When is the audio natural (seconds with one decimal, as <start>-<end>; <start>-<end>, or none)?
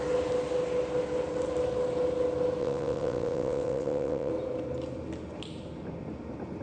0.0-2.6; 4.3-6.6